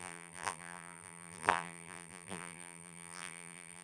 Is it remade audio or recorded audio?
remade